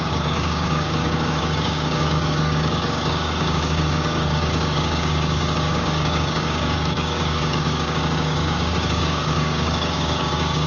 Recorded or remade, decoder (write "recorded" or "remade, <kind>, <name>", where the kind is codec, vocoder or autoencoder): remade, codec, DAC